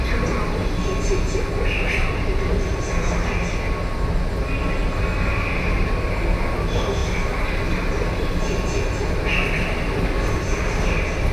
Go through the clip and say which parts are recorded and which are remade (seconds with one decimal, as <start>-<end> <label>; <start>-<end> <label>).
0.0-11.3 recorded